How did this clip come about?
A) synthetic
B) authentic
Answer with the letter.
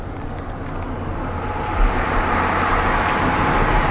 B